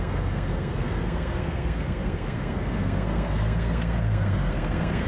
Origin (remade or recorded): remade